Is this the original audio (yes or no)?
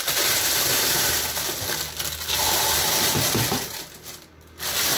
yes